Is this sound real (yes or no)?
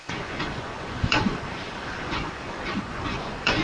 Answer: no